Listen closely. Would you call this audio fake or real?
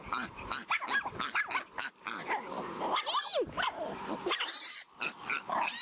real